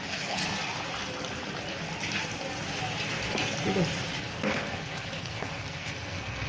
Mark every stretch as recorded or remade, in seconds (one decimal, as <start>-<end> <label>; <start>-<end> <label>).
0.0-0.4 remade; 0.4-4.3 recorded; 4.3-6.5 remade